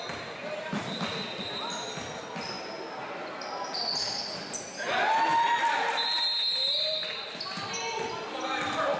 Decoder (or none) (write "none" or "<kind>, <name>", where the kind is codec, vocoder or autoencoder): none